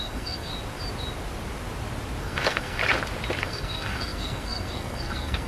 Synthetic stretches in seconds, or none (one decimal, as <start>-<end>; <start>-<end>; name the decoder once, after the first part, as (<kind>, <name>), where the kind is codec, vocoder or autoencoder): 0.0-0.5 (codec, SNAC); 2.2-2.8; 3.4-5.5